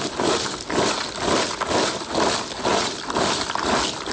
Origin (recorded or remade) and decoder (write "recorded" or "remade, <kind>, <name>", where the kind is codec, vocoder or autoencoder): recorded